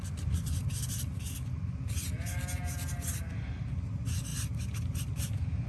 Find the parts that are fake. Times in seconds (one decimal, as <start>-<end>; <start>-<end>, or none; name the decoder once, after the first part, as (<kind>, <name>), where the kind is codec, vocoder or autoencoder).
none